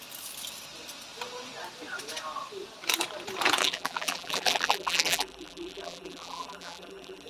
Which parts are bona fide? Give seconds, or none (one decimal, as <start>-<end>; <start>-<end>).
0.0-3.6